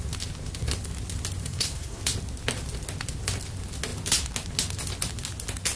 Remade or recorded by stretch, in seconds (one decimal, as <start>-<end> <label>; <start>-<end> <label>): 0.0-1.4 recorded; 1.4-2.0 remade; 2.0-5.8 recorded